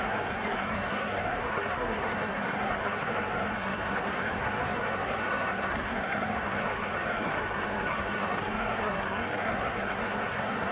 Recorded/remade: remade